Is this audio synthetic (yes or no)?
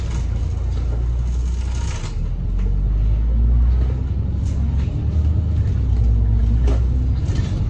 no